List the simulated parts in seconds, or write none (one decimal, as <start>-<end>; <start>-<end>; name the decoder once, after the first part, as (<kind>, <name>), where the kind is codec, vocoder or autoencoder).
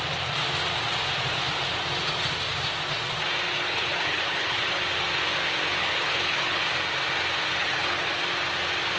3.5-4.8 (codec, HILCodec); 5.8-6.6; 7.6-8.2